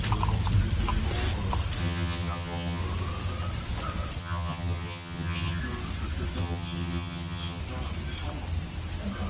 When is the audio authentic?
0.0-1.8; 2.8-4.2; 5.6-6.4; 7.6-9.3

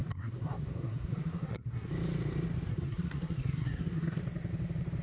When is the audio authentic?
1.9-2.7; 4.2-5.0

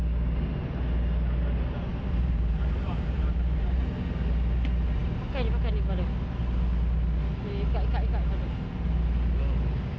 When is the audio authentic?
0.0-1.9; 3.8-10.0